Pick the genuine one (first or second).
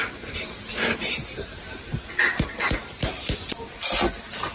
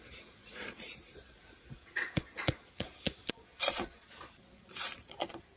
first